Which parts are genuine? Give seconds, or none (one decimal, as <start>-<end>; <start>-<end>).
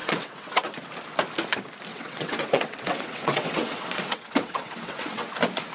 0.7-1.9; 5.3-5.7